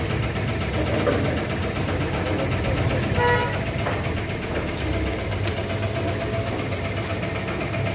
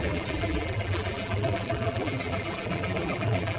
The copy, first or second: second